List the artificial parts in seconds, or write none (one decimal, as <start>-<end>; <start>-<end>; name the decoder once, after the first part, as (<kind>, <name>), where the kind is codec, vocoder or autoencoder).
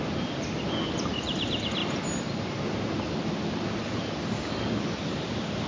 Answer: none